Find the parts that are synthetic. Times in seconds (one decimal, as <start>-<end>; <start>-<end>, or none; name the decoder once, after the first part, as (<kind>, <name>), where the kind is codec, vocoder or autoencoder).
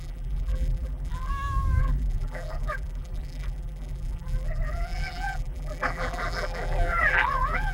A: 0.0-1.3 (vocoder, BigVGAN v2); 1.8-7.7